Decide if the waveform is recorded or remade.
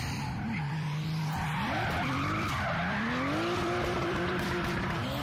remade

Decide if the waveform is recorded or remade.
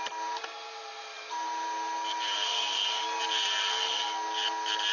recorded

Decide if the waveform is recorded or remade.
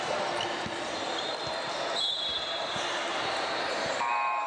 remade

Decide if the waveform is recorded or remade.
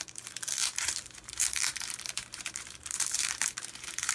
remade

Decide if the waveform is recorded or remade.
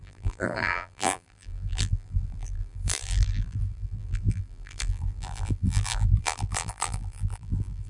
remade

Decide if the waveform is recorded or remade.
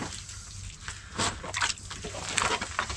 recorded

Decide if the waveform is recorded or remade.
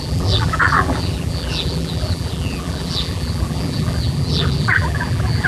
remade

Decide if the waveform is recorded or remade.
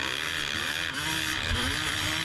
recorded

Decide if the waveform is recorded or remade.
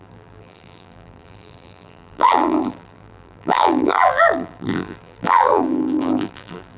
remade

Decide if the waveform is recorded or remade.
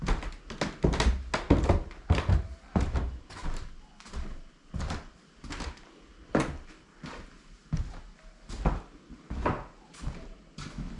recorded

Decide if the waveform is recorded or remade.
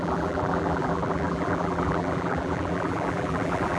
remade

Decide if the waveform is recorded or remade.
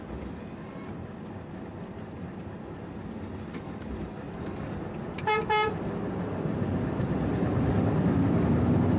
recorded